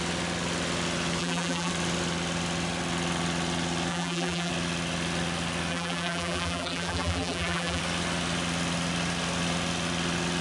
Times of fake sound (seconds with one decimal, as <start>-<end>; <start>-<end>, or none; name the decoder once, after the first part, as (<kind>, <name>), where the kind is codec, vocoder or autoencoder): 1.2-1.7 (vocoder, BigVGAN v2); 3.9-4.5; 5.7-7.8